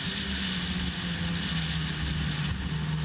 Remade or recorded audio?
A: recorded